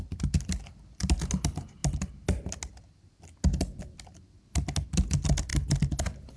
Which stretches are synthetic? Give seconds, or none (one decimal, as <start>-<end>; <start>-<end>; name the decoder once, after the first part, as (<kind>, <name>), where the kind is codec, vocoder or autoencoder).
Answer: none